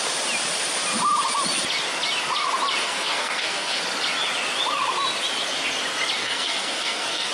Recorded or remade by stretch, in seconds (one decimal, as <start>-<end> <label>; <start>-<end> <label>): 0.0-2.8 recorded; 2.8-3.8 remade; 3.8-6.2 recorded; 6.2-7.3 remade